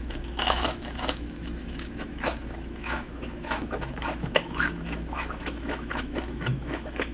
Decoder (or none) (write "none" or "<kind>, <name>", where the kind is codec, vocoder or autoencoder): autoencoder, DAC-VAE